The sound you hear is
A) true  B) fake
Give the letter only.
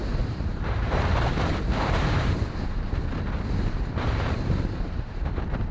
B